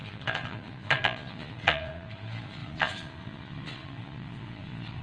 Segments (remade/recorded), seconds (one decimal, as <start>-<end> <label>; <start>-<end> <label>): 0.0-5.0 remade